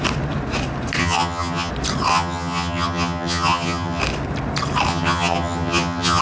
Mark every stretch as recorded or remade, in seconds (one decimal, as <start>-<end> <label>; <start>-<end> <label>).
0.0-1.0 recorded; 1.0-1.7 remade; 1.7-2.1 recorded; 2.1-4.0 remade; 4.0-4.9 recorded; 4.9-6.2 remade